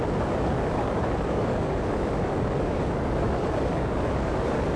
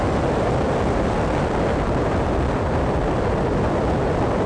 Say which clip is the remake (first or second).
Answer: first